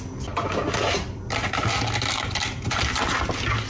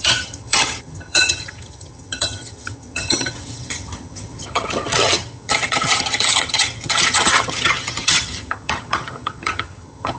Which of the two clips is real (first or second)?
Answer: first